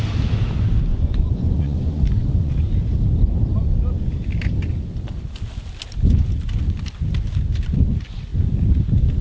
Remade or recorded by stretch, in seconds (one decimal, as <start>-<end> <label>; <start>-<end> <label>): 0.0-0.9 recorded; 0.9-2.7 remade; 2.7-9.2 recorded